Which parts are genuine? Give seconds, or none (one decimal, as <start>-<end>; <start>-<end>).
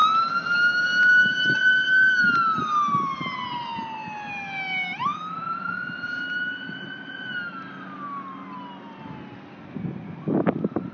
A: 0.0-10.9